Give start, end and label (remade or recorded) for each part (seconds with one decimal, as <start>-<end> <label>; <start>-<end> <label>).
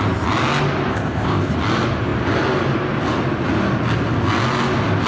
0.0-0.9 recorded; 0.9-1.5 remade; 1.5-5.1 recorded